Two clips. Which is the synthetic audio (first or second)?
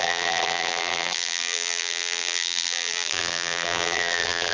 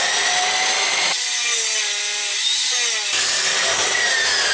first